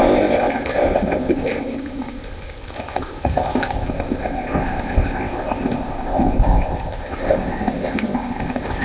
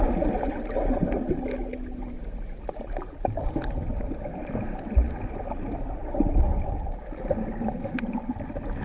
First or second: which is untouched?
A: second